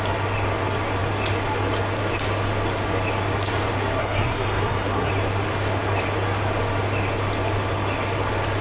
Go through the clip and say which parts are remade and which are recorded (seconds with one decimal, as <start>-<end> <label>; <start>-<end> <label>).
0.0-4.0 recorded; 4.0-5.1 remade; 5.1-8.6 recorded